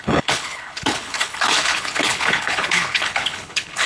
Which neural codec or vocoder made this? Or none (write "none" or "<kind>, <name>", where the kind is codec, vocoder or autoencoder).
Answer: codec, HILCodec